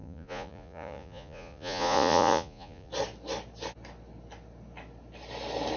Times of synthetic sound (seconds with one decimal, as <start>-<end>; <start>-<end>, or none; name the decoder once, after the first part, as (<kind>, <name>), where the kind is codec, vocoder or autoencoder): 0.0-2.9 (vocoder, Vocos)